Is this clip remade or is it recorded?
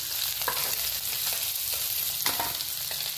recorded